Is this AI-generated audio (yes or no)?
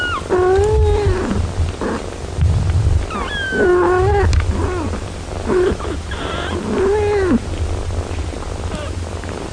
no